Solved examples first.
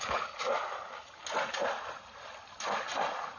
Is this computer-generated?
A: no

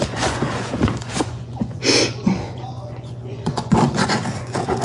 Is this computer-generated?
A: yes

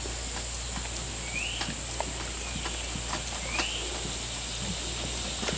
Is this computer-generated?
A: no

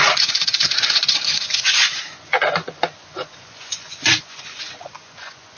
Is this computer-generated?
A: yes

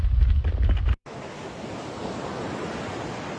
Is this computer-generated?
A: no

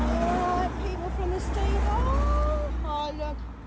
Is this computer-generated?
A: no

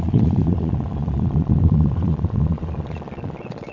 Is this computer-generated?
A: yes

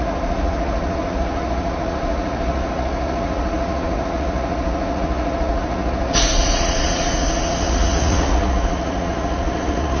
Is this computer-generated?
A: yes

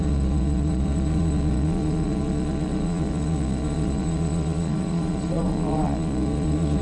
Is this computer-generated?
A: yes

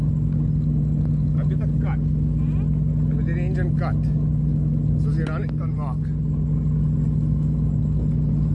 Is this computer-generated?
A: no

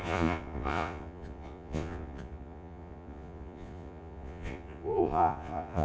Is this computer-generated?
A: yes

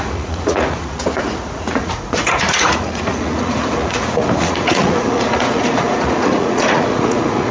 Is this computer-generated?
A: yes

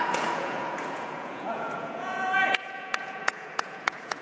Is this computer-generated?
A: yes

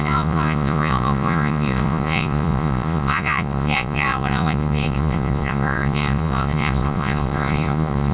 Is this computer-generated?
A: yes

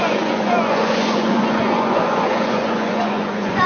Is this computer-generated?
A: yes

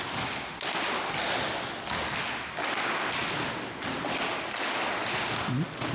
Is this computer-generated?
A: no